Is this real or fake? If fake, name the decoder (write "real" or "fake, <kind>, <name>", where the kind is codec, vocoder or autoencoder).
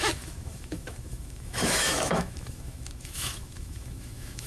fake, autoencoder, DAC-VAE